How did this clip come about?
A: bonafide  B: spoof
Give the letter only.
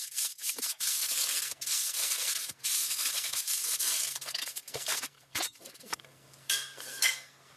B